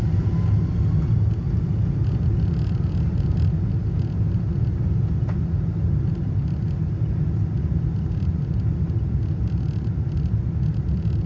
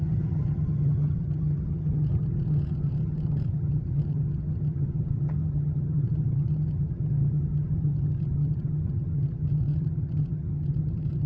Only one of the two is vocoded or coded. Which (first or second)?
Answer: second